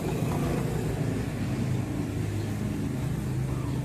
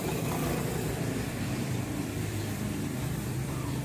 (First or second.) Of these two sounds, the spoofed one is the second